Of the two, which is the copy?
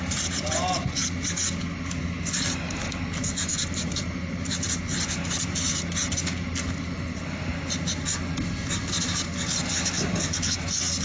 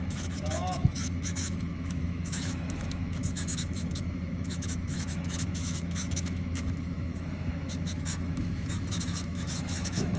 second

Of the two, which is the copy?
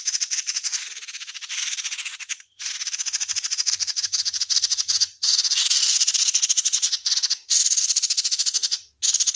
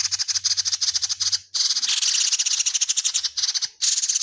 first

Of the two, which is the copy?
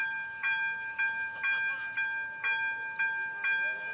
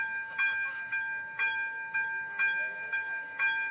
second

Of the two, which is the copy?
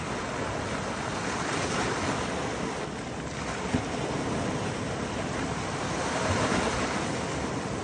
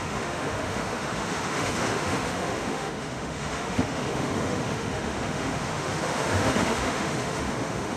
second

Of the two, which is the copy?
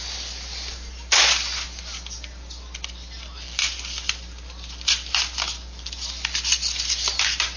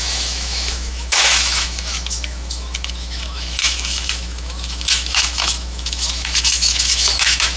second